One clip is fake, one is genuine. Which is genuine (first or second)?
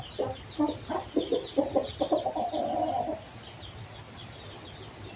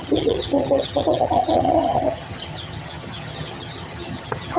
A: first